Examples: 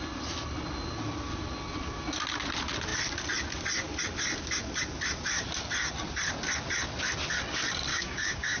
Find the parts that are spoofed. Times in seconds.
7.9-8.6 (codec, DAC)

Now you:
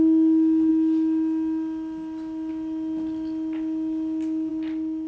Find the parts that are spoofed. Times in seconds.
none

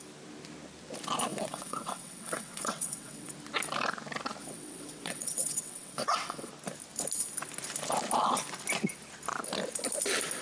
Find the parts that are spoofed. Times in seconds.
1.3-3.3 (vocoder, WaveNeXt); 4.4-6.5

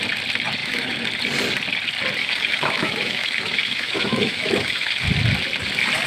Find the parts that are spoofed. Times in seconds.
0.6-1.1 (autoencoder, DAC-VAE); 2.2-5.1

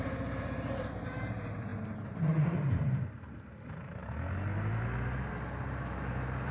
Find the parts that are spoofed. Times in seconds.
0.0-4.0 (vocoder, BigVGAN v2); 5.3-6.5

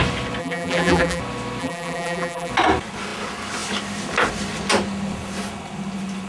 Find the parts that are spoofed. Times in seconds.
0.4-1.2 (vocoder, BigVGAN v2); 1.6-2.5

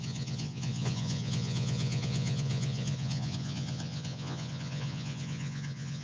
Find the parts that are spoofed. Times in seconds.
0.0-6.0 (vocoder, Vocos)

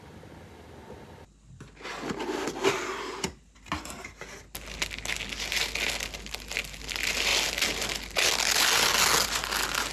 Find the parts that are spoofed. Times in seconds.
none